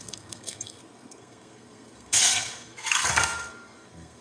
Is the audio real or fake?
fake